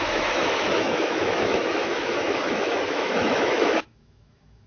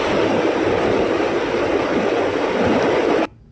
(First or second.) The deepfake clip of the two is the first